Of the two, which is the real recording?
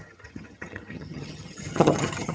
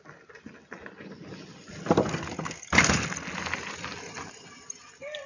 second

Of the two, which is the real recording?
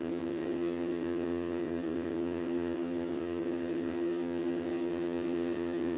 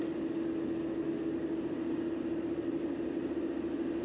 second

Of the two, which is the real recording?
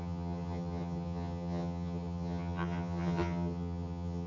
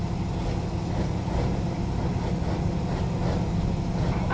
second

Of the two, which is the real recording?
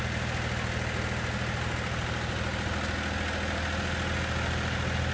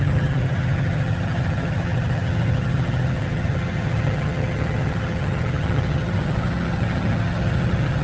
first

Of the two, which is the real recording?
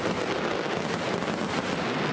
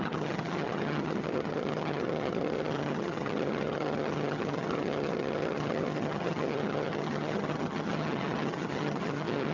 first